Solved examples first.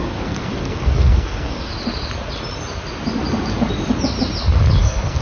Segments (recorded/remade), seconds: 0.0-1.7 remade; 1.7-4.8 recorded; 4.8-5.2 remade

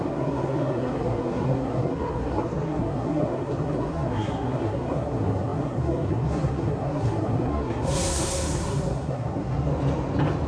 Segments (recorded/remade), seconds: 0.0-9.7 remade; 9.7-10.5 recorded

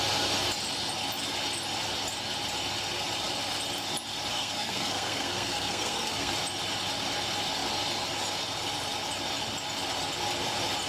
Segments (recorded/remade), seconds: 0.0-4.3 recorded; 4.3-6.3 remade; 6.3-10.9 recorded

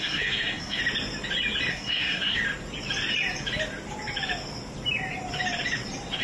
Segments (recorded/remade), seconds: 0.0-0.8 remade; 0.8-1.7 recorded; 1.7-2.4 remade; 2.4-6.2 recorded

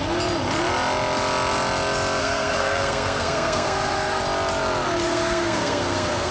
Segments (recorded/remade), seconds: 0.0-2.2 recorded; 2.2-4.2 remade; 4.2-5.1 recorded; 5.1-6.3 remade

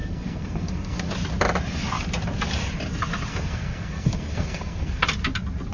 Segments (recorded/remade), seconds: 0.0-1.1 remade; 1.1-3.3 recorded; 3.3-5.0 remade; 5.0-5.7 recorded

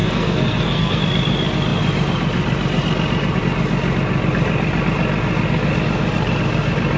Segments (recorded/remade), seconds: 0.0-1.0 remade; 1.0-7.0 recorded

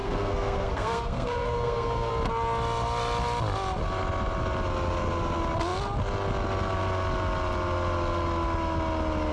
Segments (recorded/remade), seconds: 0.0-2.1 remade; 2.1-9.3 recorded